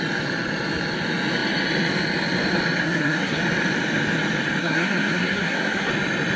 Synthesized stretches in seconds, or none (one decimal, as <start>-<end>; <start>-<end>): 2.8-3.4; 4.6-5.9